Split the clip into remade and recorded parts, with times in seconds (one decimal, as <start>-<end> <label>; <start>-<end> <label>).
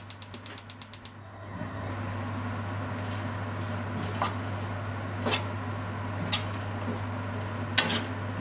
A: 0.0-1.2 recorded; 1.2-1.9 remade; 1.9-8.4 recorded